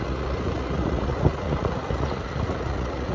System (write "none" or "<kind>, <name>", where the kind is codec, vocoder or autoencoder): vocoder, Vocos